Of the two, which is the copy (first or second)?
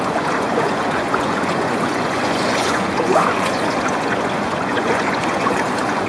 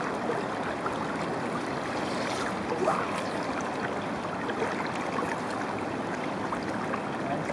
first